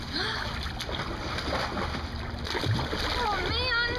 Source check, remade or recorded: recorded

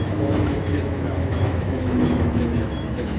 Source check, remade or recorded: remade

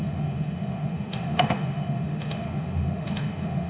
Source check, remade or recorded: remade